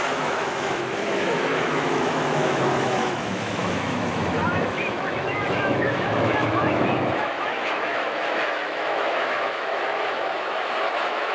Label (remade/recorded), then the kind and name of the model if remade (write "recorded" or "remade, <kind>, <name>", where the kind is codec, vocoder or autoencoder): remade, autoencoder, DAC-VAE